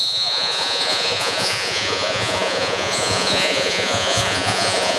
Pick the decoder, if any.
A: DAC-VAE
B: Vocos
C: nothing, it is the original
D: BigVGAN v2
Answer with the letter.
B